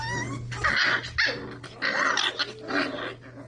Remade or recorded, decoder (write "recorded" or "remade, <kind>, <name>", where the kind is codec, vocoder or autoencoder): recorded